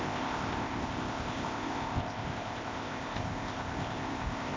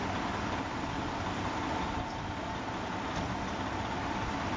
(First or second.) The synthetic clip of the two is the first